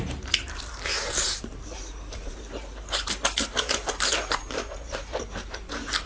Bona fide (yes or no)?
no